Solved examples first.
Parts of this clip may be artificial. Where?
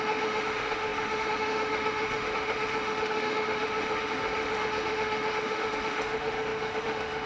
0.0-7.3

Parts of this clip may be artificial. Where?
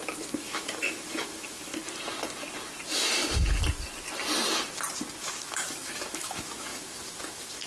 0.0-1.7; 5.2-7.7